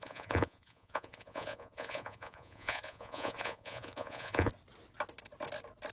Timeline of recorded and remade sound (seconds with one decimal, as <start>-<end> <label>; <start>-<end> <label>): 0.0-4.5 remade; 4.5-5.9 recorded